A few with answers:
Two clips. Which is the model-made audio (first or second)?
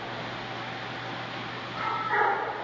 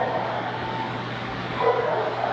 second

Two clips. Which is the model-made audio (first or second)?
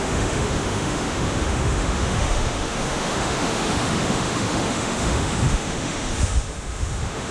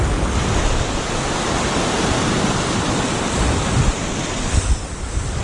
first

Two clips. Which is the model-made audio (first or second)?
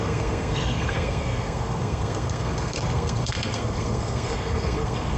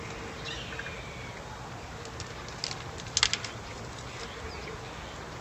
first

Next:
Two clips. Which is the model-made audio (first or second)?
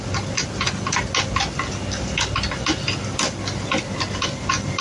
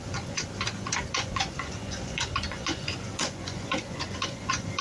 second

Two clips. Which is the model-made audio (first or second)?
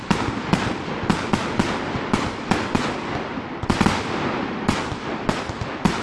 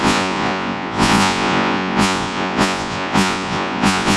second